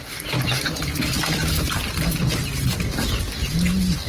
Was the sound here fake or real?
real